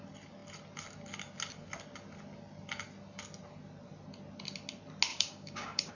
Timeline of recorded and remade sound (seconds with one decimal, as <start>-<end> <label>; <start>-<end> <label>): 0.0-5.1 recorded; 5.1-5.9 remade